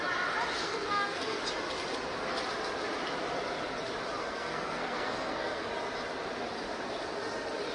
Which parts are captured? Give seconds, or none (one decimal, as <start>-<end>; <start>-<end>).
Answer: 0.0-0.6; 1.4-4.2; 5.7-7.7